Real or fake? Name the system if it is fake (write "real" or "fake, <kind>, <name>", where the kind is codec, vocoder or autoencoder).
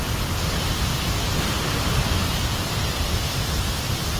fake, vocoder, BigVGAN v2